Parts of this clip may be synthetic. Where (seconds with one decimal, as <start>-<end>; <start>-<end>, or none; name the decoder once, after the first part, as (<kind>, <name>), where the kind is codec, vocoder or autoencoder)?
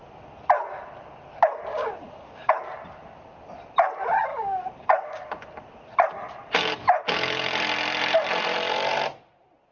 1.7-2.5 (codec, DAC); 4.3-5.3